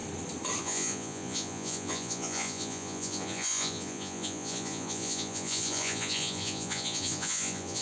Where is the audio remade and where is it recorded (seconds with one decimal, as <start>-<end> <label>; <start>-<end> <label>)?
0.0-0.6 recorded; 0.6-7.8 remade